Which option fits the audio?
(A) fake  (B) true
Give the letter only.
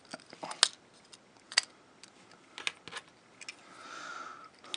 B